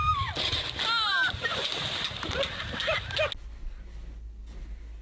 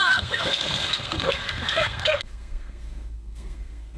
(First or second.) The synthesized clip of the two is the second